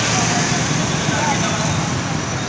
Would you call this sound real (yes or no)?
yes